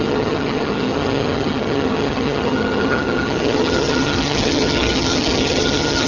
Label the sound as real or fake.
fake